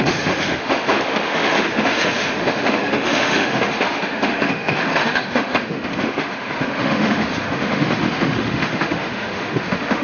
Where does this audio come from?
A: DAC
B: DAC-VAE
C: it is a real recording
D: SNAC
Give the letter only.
B